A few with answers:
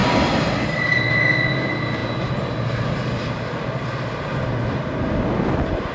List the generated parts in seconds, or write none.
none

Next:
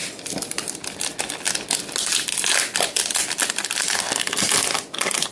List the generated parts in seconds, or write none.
none